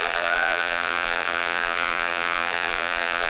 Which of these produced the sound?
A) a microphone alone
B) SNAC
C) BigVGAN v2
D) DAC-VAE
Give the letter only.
C